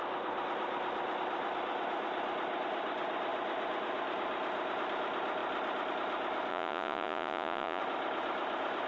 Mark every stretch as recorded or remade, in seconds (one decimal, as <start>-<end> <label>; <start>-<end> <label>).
0.0-6.5 recorded; 6.5-7.8 remade; 7.8-8.9 recorded